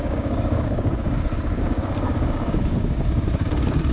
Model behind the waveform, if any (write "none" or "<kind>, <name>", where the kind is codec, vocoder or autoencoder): codec, DAC